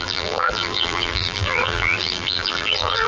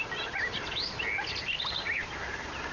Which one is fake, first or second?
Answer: first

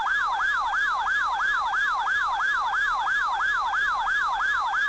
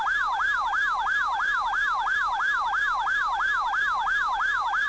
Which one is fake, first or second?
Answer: second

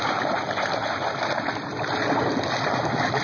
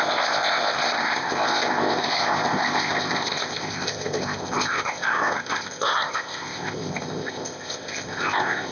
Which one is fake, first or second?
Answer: second